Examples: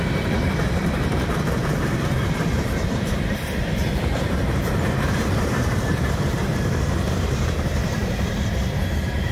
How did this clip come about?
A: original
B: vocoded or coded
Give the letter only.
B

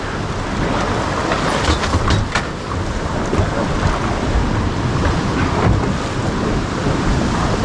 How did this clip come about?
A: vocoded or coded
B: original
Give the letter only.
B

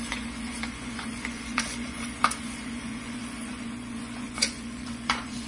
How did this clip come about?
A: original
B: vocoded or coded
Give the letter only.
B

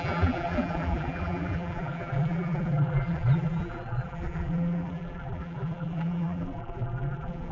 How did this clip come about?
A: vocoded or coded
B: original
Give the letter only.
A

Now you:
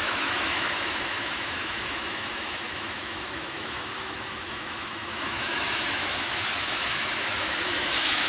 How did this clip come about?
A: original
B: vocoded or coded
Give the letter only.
B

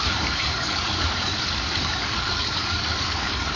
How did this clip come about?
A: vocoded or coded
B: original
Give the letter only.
A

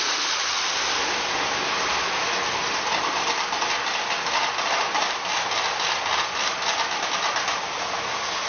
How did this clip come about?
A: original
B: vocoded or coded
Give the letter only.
A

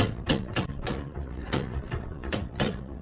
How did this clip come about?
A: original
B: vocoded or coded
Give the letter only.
B